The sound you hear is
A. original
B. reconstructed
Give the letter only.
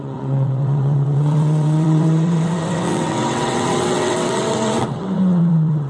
B